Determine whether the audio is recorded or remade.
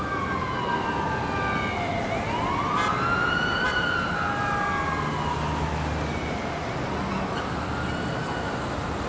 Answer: recorded